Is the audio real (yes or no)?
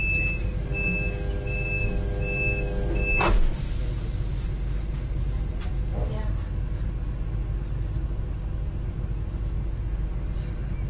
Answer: yes